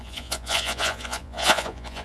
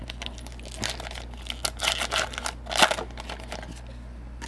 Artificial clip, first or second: first